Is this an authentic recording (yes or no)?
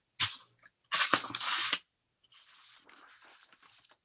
yes